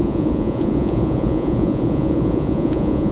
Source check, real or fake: fake